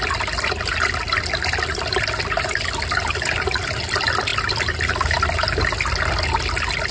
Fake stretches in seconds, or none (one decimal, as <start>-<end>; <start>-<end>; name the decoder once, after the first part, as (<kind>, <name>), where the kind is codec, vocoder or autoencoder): none